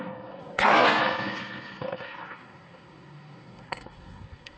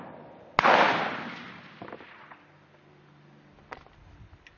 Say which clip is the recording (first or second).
second